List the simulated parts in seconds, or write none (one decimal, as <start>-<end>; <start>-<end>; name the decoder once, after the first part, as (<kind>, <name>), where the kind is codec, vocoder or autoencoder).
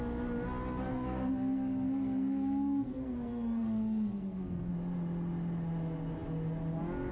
0.9-4.7 (codec, SNAC)